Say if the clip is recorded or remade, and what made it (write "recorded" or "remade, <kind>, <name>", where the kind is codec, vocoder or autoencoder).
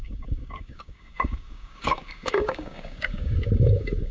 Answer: remade, codec, DAC